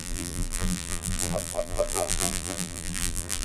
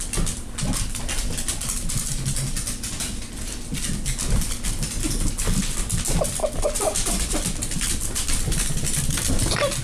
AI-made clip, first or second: first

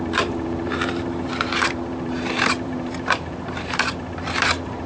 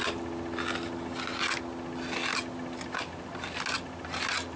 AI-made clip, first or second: first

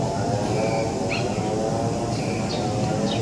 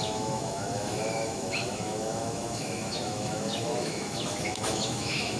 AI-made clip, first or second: second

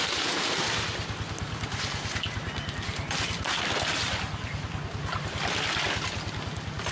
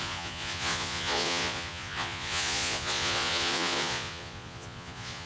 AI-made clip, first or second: second